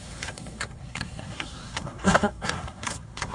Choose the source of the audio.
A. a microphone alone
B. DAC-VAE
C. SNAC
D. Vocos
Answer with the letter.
C